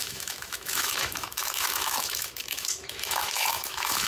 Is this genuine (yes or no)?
no